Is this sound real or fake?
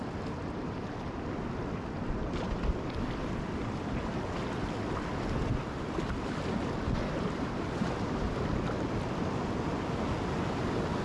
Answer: real